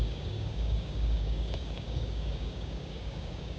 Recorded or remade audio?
remade